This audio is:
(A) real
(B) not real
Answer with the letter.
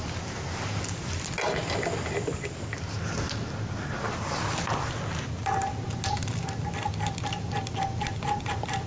A